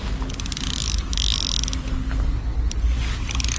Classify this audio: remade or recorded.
recorded